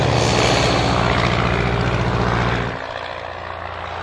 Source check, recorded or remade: recorded